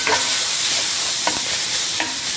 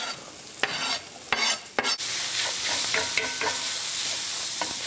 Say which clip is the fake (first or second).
first